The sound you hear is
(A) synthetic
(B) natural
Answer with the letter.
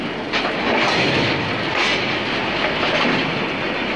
B